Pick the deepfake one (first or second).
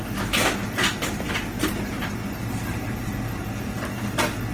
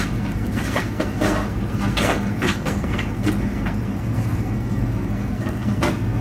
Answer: second